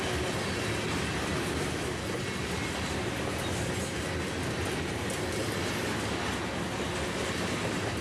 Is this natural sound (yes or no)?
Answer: yes